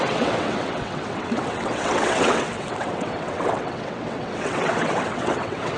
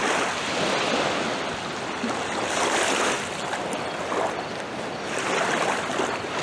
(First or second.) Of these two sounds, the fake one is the first